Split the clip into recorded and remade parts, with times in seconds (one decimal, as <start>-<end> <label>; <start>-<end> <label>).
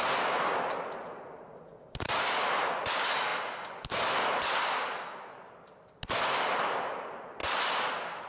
0.0-8.3 recorded